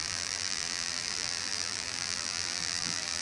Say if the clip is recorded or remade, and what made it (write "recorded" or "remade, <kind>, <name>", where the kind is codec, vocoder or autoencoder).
remade, vocoder, BigVGAN v2